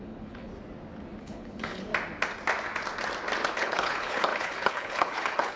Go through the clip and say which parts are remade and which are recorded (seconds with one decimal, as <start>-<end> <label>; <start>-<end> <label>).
0.0-0.5 remade; 0.5-1.2 recorded; 1.2-1.9 remade; 1.9-3.6 recorded; 3.6-5.6 remade